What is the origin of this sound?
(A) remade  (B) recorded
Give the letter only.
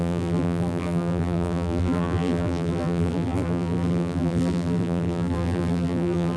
A